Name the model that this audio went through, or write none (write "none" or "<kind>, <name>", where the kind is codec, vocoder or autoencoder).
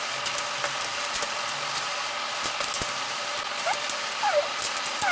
none